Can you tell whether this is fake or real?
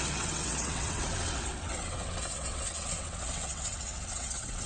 fake